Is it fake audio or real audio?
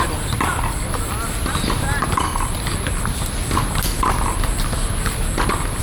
real